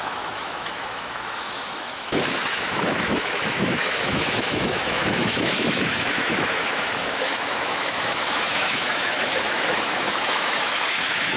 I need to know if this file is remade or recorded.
remade